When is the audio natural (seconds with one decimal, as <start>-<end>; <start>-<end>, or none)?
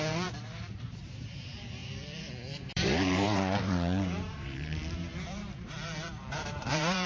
none